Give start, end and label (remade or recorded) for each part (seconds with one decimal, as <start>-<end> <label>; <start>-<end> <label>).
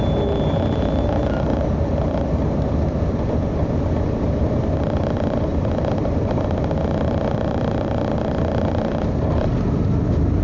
0.0-5.5 recorded; 5.5-6.3 remade; 6.3-10.4 recorded